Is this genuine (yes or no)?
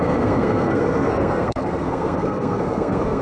no